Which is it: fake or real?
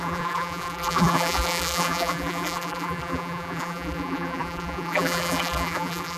fake